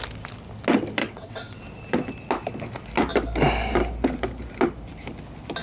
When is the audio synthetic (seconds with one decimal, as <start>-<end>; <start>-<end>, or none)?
1.0-1.6